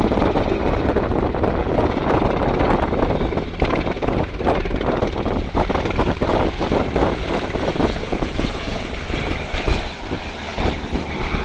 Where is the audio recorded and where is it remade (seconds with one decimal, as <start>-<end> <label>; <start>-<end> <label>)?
0.0-1.6 recorded; 1.6-2.2 remade; 2.2-7.7 recorded; 7.7-8.9 remade; 8.9-11.4 recorded